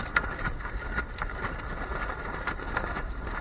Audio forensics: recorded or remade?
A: recorded